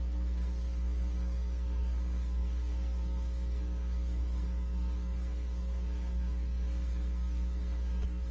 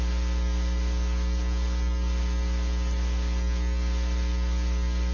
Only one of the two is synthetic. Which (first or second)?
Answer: first